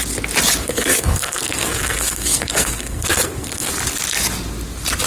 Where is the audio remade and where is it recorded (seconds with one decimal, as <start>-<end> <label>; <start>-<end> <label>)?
0.0-0.6 recorded; 0.6-3.7 remade; 3.7-5.1 recorded